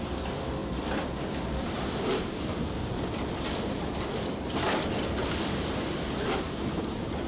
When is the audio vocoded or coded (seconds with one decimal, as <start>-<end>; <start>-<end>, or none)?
0.6-5.0